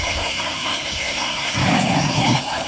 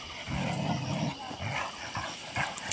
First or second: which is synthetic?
first